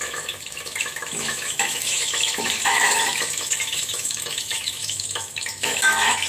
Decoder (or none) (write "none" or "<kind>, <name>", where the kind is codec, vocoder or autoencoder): autoencoder, DAC-VAE